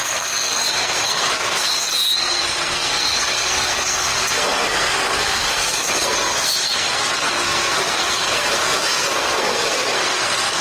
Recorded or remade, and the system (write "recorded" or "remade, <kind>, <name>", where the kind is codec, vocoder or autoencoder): remade, codec, SNAC